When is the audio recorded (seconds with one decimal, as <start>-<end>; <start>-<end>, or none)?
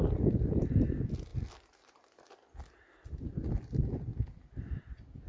0.0-5.3